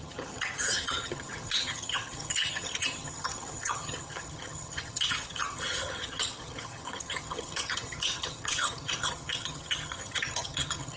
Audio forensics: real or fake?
fake